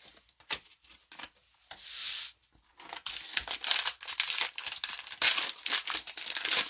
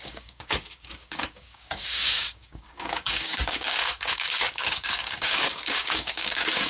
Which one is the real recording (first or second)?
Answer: first